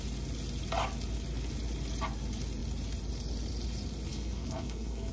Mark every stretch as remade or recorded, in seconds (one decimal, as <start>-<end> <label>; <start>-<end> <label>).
0.0-4.1 recorded; 4.1-5.1 remade